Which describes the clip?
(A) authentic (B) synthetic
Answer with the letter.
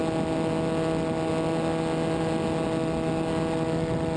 A